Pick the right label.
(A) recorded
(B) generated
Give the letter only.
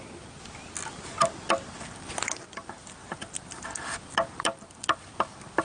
A